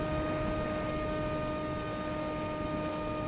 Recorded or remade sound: recorded